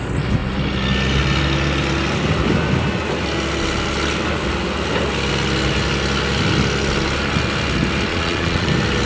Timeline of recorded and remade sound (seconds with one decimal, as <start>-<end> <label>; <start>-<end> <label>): 0.0-8.1 recorded; 8.1-8.7 remade; 8.7-9.1 recorded